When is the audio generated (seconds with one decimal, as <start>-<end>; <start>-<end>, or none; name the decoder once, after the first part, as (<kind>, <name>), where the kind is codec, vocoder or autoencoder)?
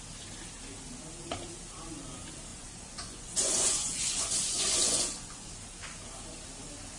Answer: 2.5-5.5 (vocoder, Vocos)